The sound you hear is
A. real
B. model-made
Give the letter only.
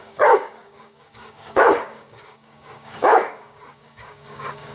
B